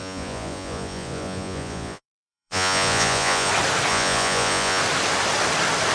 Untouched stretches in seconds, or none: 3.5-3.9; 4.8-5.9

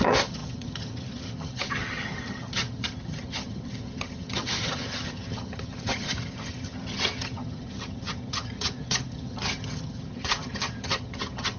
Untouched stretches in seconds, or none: none

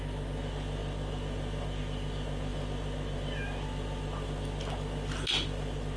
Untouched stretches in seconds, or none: 0.0-6.0